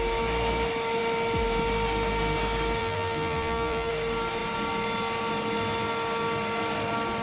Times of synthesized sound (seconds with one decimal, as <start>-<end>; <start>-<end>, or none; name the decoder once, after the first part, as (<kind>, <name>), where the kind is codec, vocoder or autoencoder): 2.8-3.9 (vocoder, BigVGAN v2)